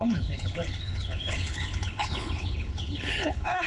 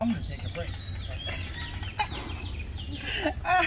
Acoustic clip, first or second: second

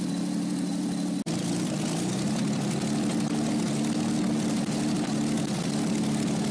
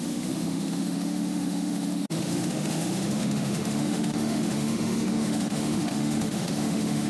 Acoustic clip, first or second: first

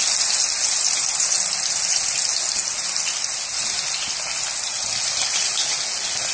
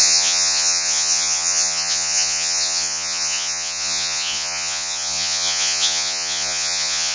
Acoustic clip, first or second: first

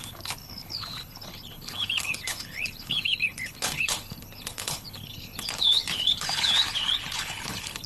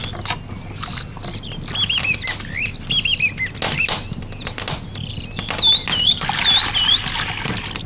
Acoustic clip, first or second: second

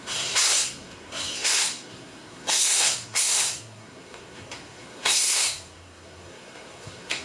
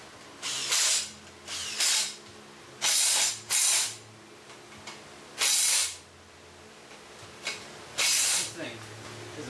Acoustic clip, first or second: second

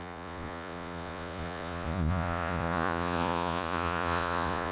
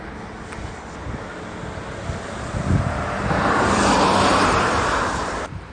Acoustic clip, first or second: second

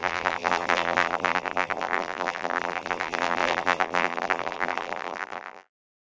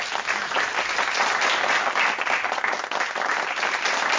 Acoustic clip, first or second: second